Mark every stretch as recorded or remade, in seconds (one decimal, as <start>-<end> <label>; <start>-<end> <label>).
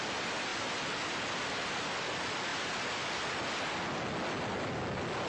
0.0-5.3 recorded